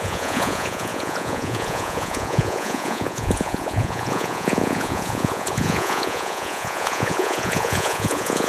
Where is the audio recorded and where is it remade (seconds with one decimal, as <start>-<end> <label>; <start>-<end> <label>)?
0.0-8.5 remade